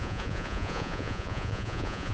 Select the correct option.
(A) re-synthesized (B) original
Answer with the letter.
A